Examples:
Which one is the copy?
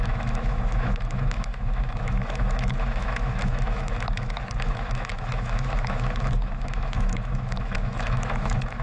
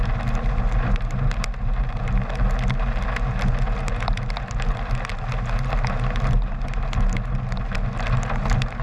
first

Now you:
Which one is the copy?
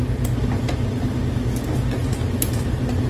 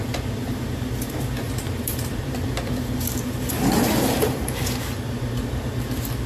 second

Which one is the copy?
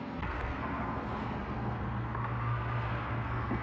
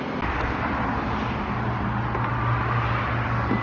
first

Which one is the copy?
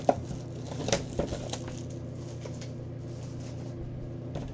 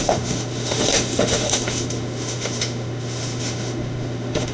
second